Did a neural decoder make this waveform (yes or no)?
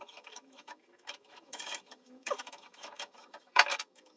yes